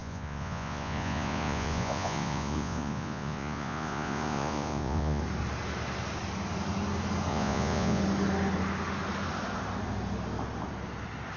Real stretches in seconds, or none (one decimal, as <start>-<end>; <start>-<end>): 5.2-7.3; 8.0-11.4